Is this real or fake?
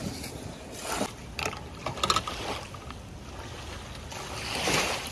real